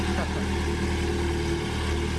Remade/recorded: recorded